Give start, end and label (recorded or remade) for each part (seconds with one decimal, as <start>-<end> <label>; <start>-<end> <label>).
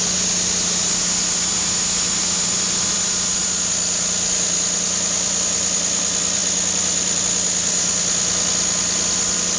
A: 0.0-6.4 recorded; 6.4-7.2 remade; 7.2-9.6 recorded